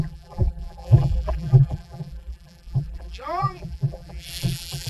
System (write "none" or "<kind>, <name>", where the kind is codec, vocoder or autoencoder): vocoder, BigVGAN v2